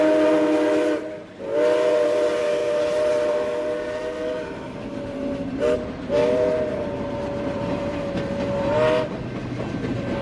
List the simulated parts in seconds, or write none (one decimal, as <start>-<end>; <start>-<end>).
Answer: none